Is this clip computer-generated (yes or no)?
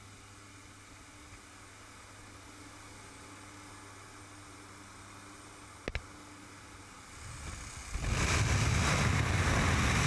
no